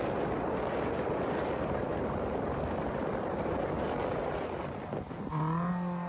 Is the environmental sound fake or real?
real